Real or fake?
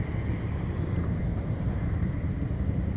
fake